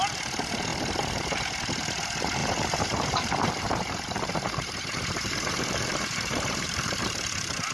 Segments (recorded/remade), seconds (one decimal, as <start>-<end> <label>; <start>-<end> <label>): 0.0-2.4 recorded; 2.4-7.0 remade; 7.0-7.7 recorded